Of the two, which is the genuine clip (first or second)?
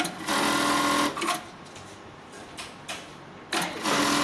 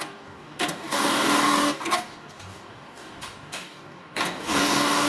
first